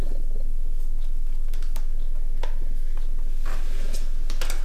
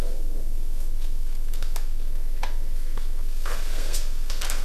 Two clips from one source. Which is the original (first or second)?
first